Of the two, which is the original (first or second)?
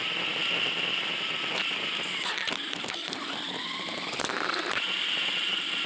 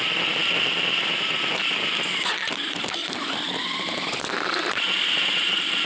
first